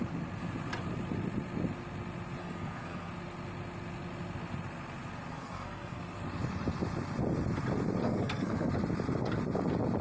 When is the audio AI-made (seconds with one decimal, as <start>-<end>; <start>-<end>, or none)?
2.4-3.1; 5.3-6.0; 8.0-8.7